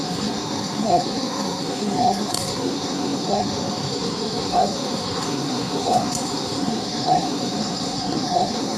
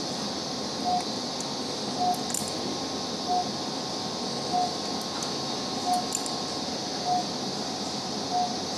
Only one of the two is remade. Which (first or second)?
first